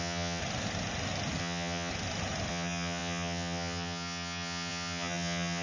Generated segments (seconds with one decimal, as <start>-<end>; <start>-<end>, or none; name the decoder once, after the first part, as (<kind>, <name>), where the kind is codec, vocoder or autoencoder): 0.0-0.4 (vocoder, HiFi-GAN); 1.4-1.9; 2.5-5.6